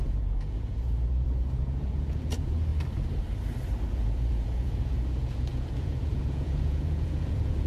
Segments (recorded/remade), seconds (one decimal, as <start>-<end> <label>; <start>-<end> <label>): 0.0-2.7 remade; 2.7-3.9 recorded; 3.9-7.7 remade